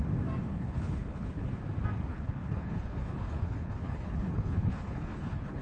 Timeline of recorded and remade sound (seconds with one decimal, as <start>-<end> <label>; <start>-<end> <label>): 0.0-0.5 recorded; 0.5-1.5 remade; 1.5-2.1 recorded; 2.1-5.6 remade